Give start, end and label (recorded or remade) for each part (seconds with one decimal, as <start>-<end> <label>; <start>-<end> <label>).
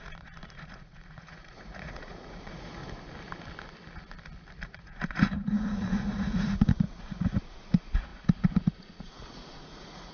0.0-2.8 remade; 2.8-4.6 recorded; 4.6-10.1 remade